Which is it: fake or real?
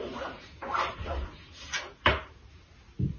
real